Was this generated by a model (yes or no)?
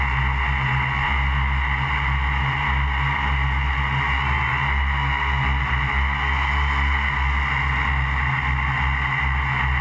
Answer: no